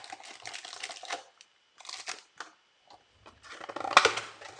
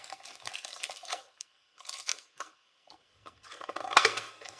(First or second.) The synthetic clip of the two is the second